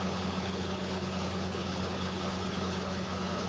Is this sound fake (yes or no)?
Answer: yes